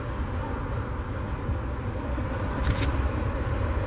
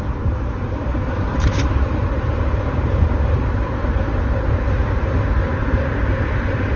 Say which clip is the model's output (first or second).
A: second